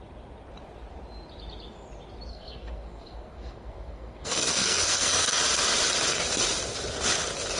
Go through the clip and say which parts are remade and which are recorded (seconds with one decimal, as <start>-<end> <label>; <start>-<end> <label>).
0.0-2.3 recorded; 2.3-5.4 remade; 5.4-7.6 recorded